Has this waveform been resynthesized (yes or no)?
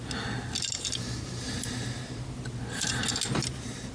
no